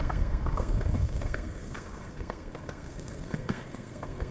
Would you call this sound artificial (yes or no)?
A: yes